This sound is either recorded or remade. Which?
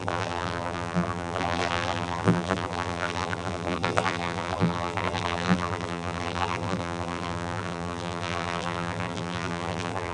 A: remade